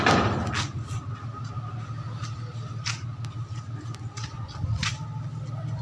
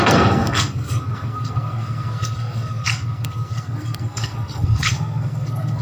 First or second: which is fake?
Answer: second